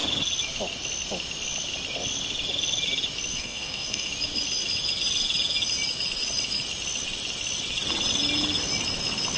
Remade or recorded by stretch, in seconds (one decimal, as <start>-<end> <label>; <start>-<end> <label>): 0.0-3.3 recorded; 3.3-4.1 remade; 4.1-9.4 recorded